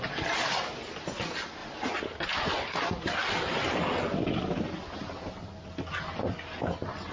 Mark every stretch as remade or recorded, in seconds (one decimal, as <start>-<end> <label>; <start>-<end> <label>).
0.0-7.1 recorded